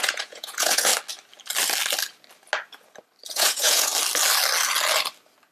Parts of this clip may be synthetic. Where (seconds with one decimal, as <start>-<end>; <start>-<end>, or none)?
0.0-0.9; 3.3-3.9